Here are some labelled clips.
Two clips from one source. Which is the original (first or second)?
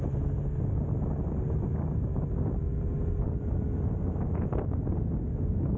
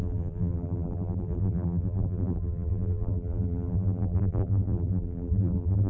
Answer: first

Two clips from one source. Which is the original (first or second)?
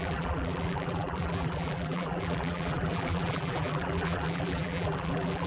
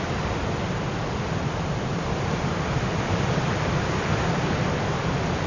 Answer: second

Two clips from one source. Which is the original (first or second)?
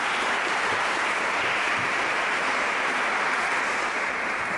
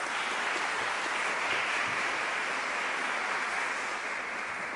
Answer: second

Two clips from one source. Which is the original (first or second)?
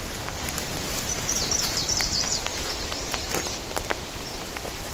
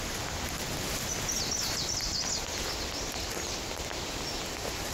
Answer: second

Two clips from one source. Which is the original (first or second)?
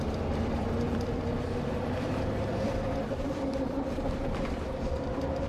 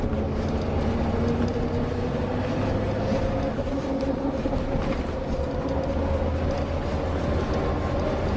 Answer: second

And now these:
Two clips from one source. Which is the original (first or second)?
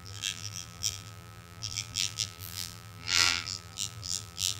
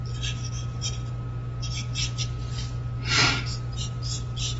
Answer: second